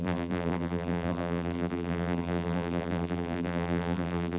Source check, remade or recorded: remade